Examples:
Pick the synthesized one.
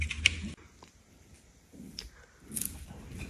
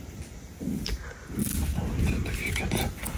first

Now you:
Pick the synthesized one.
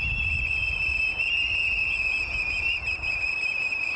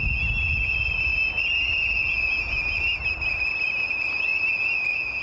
first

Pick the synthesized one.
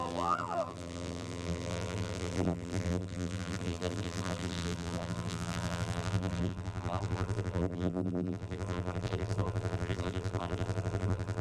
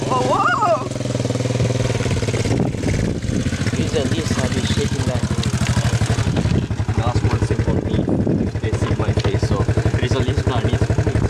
first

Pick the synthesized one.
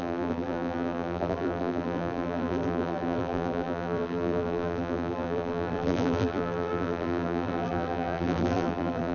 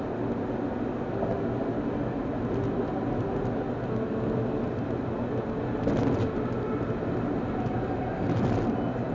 first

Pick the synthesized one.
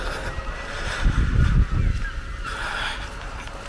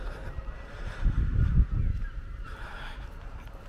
second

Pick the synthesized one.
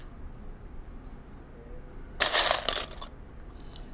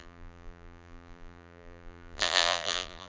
second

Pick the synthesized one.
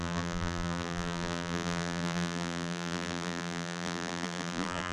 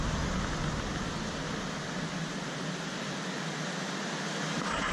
first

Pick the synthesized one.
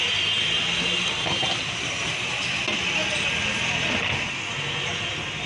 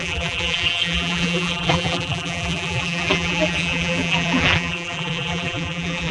second